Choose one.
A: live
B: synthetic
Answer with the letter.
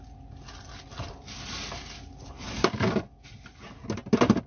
A